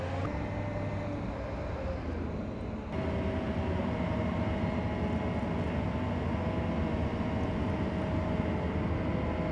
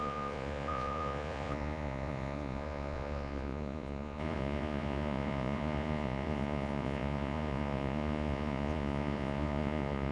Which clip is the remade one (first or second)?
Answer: second